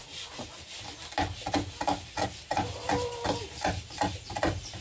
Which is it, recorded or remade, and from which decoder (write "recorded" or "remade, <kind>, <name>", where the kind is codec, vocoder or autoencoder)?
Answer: recorded